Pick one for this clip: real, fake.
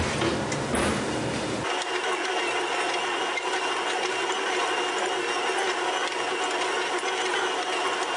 real